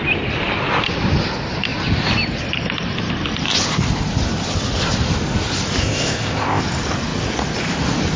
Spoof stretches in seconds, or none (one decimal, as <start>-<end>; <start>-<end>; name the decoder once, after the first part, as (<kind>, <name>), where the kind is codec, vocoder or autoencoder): 5.8-6.6 (codec, ZipCodec)